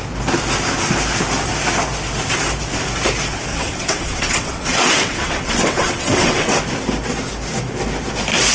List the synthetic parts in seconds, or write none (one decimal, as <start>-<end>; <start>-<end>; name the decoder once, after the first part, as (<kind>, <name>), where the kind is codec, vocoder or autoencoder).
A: 3.5-6.6 (vocoder, WaveNeXt)